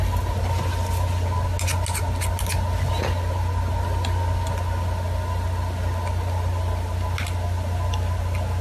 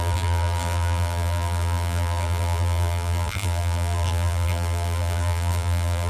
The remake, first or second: second